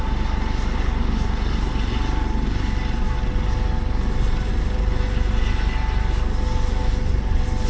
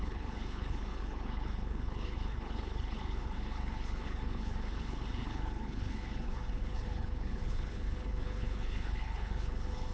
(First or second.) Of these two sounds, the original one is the first